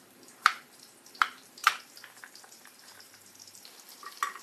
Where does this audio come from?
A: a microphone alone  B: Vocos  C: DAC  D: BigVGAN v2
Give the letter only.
D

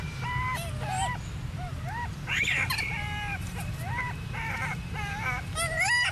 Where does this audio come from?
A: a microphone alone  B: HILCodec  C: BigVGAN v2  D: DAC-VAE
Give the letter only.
C